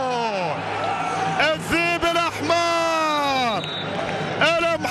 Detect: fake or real real